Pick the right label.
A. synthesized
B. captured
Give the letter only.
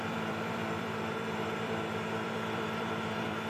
A